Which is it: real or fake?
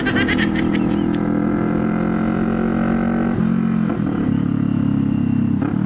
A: real